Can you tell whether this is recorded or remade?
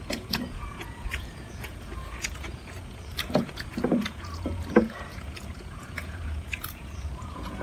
remade